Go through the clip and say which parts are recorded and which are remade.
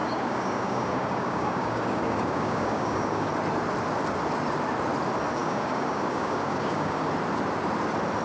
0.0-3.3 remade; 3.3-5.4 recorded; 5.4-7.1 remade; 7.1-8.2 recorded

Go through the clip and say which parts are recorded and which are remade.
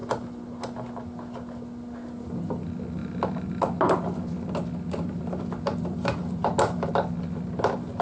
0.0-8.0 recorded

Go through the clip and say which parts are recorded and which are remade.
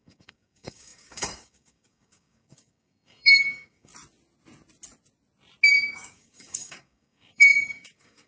0.0-3.9 remade; 3.9-5.7 recorded; 5.7-8.3 remade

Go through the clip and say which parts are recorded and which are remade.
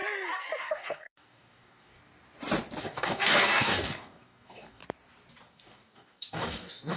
0.0-0.6 recorded; 0.6-2.0 remade; 2.0-2.8 recorded; 2.8-4.8 remade; 4.8-5.5 recorded; 5.5-7.0 remade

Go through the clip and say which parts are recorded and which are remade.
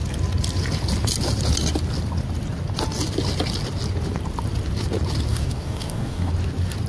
0.0-5.3 recorded; 5.3-6.3 remade; 6.3-6.9 recorded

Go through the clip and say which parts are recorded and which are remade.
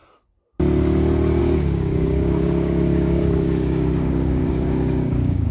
0.0-1.4 recorded; 1.4-5.5 remade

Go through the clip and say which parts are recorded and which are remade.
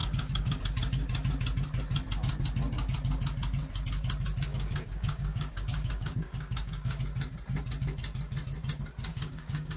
0.0-0.6 remade; 0.6-4.5 recorded; 4.5-7.0 remade; 7.0-9.1 recorded; 9.1-9.8 remade